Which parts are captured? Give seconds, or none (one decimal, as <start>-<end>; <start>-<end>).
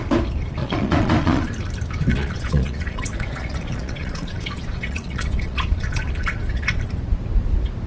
0.0-0.6; 1.5-2.1; 6.8-7.9